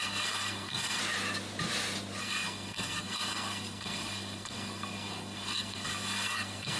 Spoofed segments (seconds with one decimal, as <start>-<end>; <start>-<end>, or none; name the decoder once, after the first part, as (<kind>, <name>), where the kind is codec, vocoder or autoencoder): 0.0-1.0 (codec, SNAC); 2.2-6.8